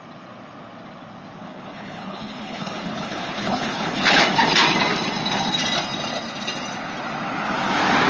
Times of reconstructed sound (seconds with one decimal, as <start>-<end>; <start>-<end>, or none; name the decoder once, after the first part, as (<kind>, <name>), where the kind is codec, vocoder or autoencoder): 1.4-4.2 (codec, HILCodec)